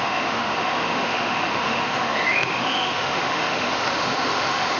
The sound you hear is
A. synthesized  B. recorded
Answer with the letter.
A